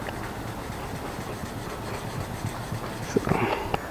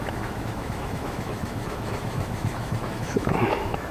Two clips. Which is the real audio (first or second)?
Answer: first